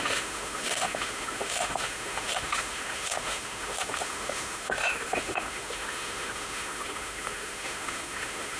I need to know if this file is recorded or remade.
remade